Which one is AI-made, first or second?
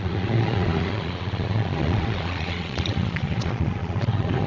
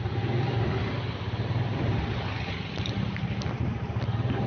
first